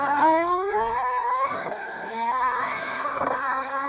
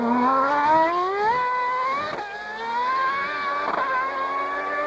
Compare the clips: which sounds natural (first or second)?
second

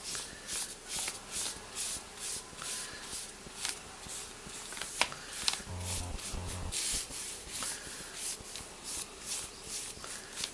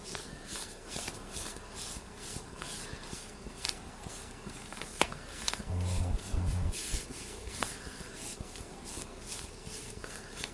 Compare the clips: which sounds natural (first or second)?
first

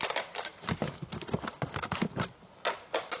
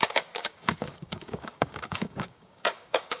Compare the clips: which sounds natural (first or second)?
first